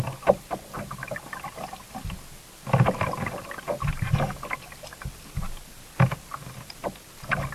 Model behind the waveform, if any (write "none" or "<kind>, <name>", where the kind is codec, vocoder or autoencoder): none